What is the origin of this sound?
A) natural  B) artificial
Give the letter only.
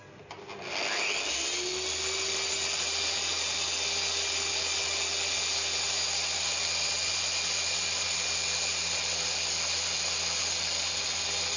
A